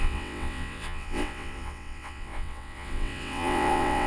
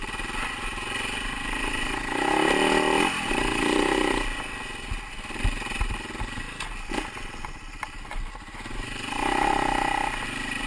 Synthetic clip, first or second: first